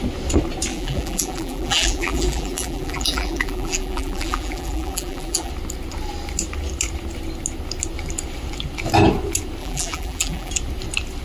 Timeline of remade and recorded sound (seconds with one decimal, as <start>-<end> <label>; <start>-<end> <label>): 0.0-0.7 recorded; 0.7-5.5 remade; 5.5-9.6 recorded; 9.6-10.5 remade; 10.5-11.2 recorded

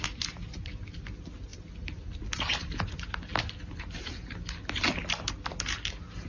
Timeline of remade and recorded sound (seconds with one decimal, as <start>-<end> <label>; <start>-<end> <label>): 0.0-6.3 recorded

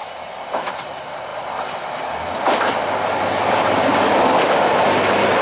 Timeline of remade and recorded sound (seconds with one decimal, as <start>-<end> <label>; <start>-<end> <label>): 0.0-0.7 remade; 0.7-1.3 recorded; 1.3-4.5 remade; 4.5-5.4 recorded

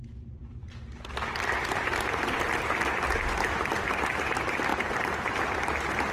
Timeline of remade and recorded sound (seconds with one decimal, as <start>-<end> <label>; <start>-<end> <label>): 0.0-4.7 recorded; 4.7-6.1 remade

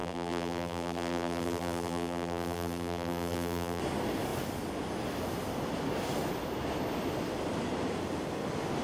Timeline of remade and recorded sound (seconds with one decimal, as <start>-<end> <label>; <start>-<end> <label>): 0.0-3.8 remade; 3.8-8.8 recorded

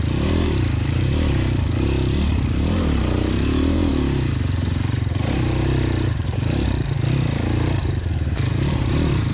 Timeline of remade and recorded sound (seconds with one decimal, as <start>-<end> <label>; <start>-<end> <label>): 0.0-9.3 remade